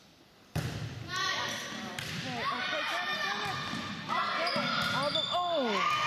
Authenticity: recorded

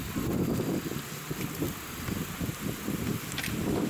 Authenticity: recorded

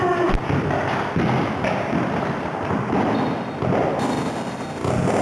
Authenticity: recorded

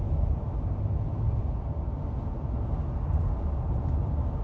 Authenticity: recorded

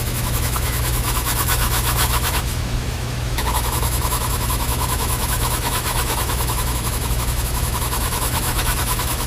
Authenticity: remade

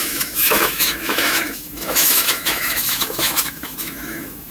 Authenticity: remade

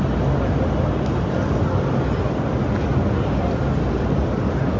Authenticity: recorded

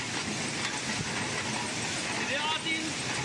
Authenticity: recorded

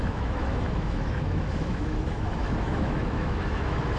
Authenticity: remade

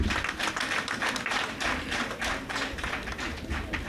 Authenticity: recorded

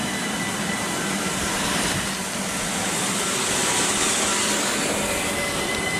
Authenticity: recorded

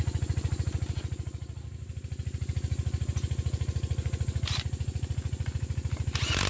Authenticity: recorded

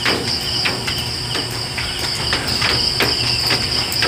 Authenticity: recorded